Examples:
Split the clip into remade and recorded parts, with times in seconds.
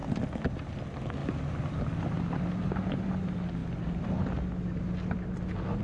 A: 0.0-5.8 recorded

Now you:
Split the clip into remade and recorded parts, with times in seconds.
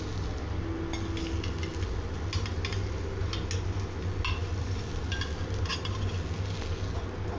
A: 0.0-4.4 recorded; 4.4-4.9 remade; 4.9-7.4 recorded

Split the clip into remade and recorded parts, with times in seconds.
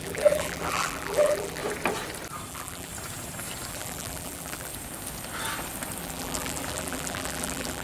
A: 0.0-1.6 remade; 1.6-2.5 recorded; 2.5-2.9 remade; 2.9-3.7 recorded; 3.7-4.7 remade; 4.7-6.0 recorded; 6.0-7.8 remade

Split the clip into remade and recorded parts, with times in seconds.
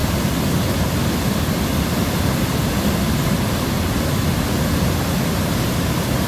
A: 0.0-6.3 recorded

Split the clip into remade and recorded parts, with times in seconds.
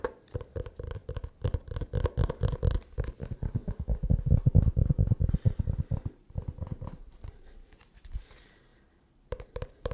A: 0.0-1.0 remade; 1.0-2.3 recorded; 2.3-3.6 remade; 3.6-4.3 recorded; 4.3-9.9 remade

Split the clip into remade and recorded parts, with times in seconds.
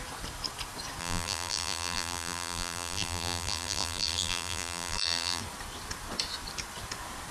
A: 0.0-1.0 recorded; 1.0-5.4 remade; 5.4-7.3 recorded